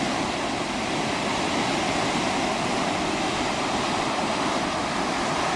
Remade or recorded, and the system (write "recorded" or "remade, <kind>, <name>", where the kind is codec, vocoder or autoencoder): recorded